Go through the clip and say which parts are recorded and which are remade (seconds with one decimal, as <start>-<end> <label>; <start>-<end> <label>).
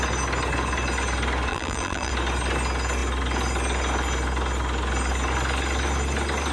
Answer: 0.0-1.5 recorded; 1.5-2.1 remade; 2.1-6.5 recorded